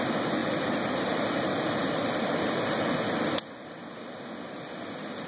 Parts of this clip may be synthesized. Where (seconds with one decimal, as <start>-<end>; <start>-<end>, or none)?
0.4-3.2